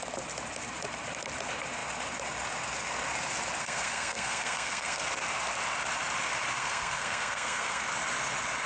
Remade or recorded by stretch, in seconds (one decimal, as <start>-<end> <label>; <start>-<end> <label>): 0.0-3.6 recorded; 3.6-5.0 remade; 5.0-6.6 recorded; 6.6-7.8 remade; 7.8-8.7 recorded